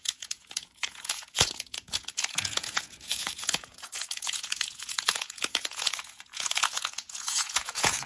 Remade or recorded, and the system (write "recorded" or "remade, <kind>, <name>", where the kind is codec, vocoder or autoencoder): remade, vocoder, Vocos